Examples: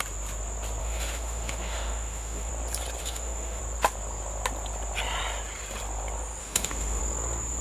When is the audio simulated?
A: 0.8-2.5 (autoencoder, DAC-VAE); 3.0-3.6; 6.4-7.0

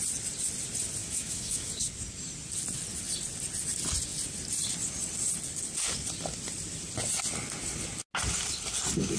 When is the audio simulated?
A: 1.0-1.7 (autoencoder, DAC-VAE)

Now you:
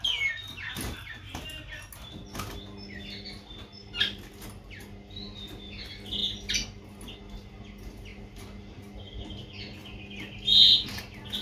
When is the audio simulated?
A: none